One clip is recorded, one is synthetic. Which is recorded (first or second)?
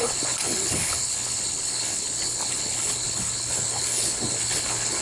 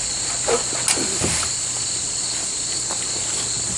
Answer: second